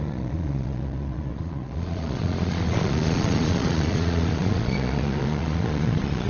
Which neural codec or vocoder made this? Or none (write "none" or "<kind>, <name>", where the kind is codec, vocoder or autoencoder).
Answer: vocoder, Vocos